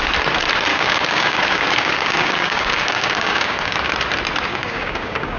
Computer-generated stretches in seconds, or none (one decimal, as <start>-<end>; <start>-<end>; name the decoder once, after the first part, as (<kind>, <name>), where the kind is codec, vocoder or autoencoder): 0.7-3.9 (codec, DAC); 4.5-5.4